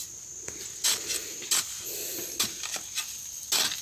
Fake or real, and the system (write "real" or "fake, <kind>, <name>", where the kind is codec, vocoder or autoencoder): real